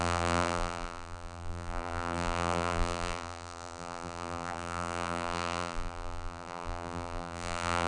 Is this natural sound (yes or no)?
no